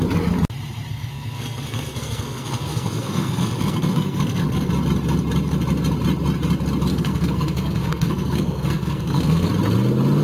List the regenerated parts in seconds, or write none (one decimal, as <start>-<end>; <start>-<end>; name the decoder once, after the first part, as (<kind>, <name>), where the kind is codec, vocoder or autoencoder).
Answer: 0.9-4.7 (codec, SNAC); 6.9-9.5